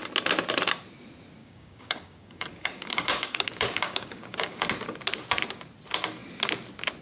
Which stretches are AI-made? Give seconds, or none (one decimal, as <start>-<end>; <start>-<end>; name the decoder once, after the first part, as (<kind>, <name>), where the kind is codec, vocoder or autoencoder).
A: 1.4-4.6 (codec, DAC)